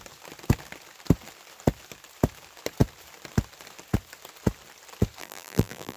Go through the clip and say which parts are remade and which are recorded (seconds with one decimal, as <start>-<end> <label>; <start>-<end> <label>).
0.0-5.2 recorded; 5.2-6.0 remade